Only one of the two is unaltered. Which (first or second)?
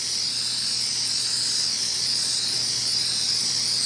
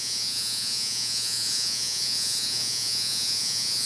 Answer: first